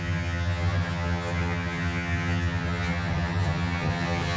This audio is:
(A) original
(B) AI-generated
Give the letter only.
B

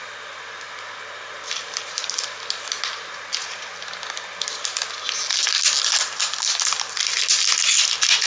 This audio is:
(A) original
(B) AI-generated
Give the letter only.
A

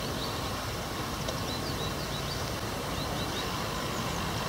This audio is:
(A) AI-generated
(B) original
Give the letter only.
B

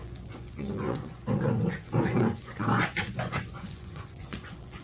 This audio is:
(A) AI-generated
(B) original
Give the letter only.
A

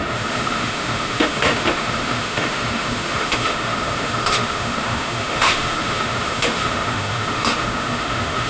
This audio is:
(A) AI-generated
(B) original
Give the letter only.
A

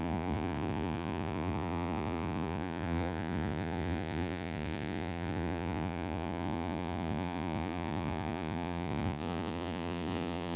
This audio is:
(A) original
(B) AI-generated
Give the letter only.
B